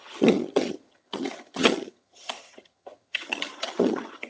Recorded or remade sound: remade